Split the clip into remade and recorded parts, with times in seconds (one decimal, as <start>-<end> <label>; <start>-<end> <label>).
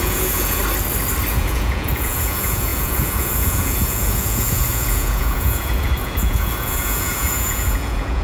0.0-0.6 remade; 0.6-1.3 recorded; 1.3-8.2 remade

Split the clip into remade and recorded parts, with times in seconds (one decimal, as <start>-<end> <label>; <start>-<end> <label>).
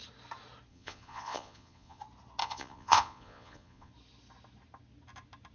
0.0-0.7 recorded; 0.7-2.0 remade; 2.0-2.4 recorded; 2.4-3.9 remade; 3.9-5.5 recorded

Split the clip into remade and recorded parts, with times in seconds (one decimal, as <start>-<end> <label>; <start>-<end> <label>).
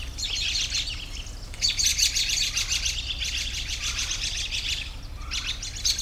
0.0-6.0 recorded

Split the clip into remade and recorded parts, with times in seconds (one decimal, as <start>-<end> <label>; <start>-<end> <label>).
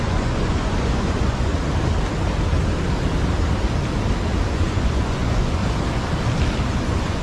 0.0-1.5 remade; 1.5-4.5 recorded; 4.5-5.6 remade; 5.6-6.7 recorded; 6.7-7.2 remade